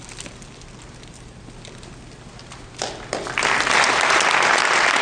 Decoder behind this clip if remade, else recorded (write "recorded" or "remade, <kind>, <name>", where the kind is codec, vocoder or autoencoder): recorded